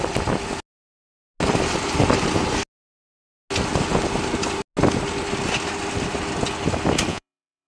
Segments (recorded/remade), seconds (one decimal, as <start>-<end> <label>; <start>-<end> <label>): 0.0-7.1 recorded; 7.1-7.7 remade